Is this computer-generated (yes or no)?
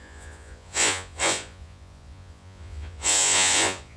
yes